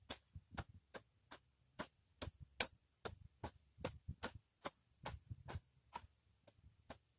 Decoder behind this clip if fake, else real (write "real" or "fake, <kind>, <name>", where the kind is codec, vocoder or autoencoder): real